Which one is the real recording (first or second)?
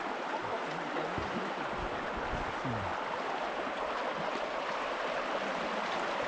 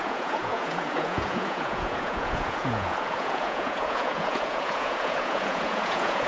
first